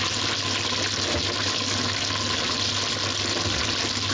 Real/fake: real